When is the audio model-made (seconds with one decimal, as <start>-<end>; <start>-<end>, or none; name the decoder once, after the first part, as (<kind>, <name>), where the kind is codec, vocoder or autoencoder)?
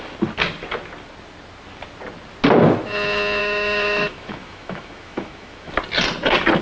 3.4-5.7 (autoencoder, DAC-VAE)